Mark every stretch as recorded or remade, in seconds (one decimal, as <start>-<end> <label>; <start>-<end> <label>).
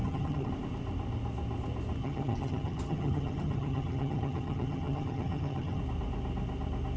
0.0-0.5 remade; 0.5-2.0 recorded; 2.0-5.8 remade; 5.8-7.0 recorded